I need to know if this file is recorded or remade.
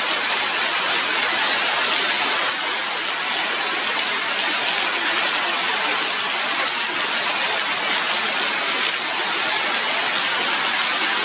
recorded